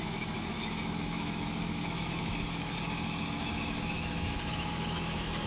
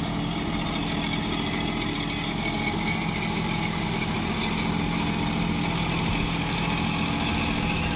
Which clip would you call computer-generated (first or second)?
first